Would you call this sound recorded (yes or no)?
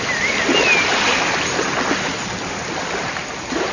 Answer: yes